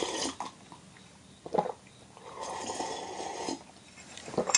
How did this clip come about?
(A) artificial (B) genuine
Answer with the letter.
B